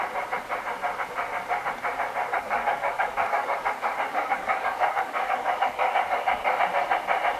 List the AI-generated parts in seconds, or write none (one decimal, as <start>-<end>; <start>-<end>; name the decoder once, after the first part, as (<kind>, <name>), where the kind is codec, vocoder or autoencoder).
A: 2.2-6.6 (codec, DAC)

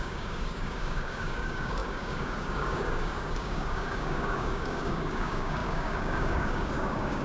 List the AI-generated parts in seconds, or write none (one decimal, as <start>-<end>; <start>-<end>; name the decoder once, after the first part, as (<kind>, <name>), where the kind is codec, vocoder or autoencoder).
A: 0.0-7.2 (codec, DAC)

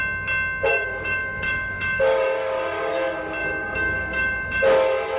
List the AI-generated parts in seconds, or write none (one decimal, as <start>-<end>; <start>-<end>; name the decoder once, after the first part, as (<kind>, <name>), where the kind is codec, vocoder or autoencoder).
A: 0.7-2.9 (codec, DAC); 3.4-4.6

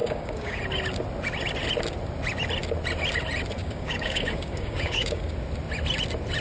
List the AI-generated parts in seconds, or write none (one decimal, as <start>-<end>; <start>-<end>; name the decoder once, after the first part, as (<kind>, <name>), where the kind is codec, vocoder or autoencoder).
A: 0.0-0.6 (codec, DAC); 3.6-5.2

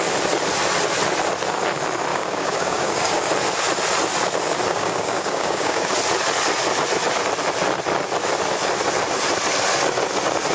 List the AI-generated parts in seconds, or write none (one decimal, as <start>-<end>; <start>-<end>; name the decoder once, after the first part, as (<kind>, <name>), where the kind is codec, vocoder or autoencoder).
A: 2.1-3.3 (codec, DAC); 4.7-5.9

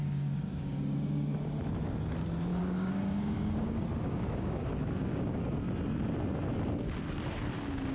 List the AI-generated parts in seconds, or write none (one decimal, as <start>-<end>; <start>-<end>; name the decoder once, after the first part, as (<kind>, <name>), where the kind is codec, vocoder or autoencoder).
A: 0.0-1.6 (codec, DAC); 2.5-5.5

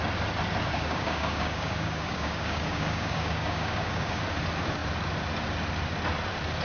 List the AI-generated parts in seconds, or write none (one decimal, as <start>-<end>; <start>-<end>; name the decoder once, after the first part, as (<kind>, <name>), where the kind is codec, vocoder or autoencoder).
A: 0.7-4.2 (codec, DAC)